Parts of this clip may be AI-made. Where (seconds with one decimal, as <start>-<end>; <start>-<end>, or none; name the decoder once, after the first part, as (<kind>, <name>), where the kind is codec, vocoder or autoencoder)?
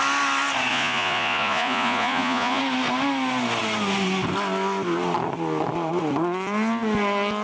0.7-2.6 (vocoder, Vocos)